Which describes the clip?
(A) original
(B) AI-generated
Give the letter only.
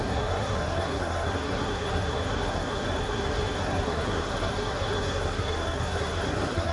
B